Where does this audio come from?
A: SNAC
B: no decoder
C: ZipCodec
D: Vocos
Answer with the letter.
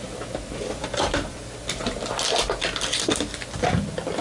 B